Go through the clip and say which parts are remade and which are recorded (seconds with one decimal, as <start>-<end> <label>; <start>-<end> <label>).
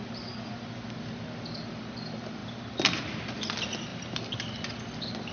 0.0-5.3 recorded